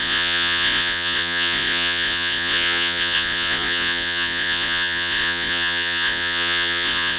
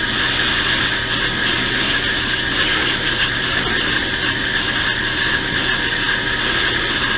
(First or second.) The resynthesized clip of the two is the first